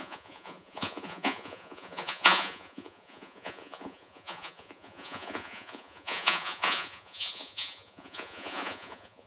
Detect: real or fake fake